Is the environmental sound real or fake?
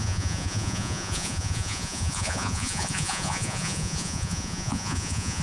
fake